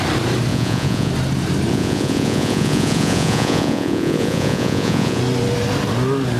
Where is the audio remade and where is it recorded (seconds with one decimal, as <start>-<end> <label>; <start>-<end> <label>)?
0.0-0.5 recorded; 0.5-1.1 remade; 1.1-1.7 recorded; 1.7-5.2 remade; 5.2-6.4 recorded